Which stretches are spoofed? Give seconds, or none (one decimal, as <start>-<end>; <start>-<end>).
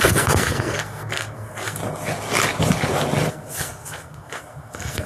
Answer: 0.0-1.8; 3.3-5.1